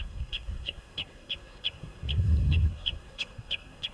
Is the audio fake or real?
fake